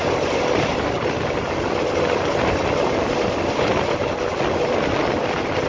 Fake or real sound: real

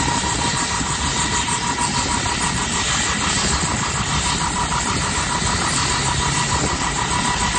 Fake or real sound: real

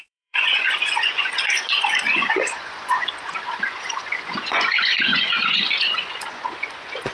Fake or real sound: fake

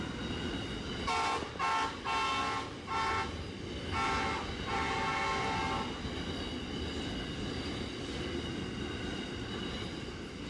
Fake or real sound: real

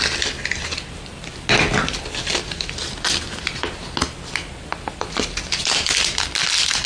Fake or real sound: real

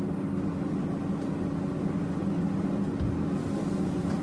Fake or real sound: real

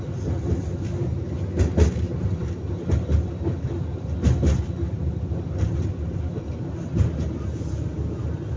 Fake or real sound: real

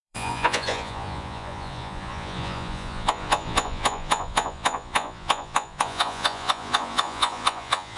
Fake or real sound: fake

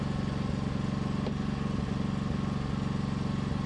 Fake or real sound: real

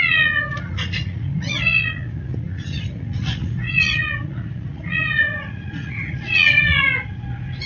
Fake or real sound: fake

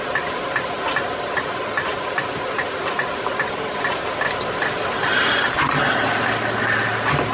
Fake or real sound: real